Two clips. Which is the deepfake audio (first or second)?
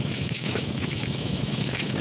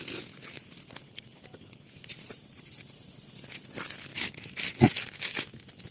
first